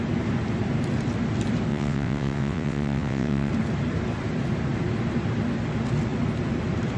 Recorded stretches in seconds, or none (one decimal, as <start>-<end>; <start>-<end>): 0.0-1.7; 3.5-7.0